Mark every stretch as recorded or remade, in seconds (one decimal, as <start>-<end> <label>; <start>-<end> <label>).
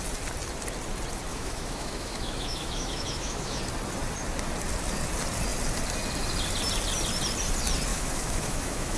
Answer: 0.0-1.3 recorded; 1.3-3.6 remade; 3.6-7.9 recorded; 7.9-9.0 remade